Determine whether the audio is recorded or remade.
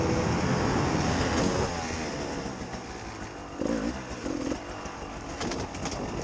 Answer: recorded